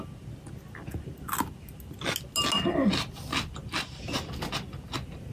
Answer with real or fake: real